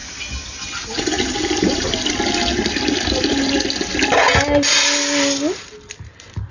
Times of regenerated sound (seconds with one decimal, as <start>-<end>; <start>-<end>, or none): none